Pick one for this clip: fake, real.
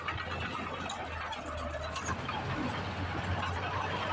real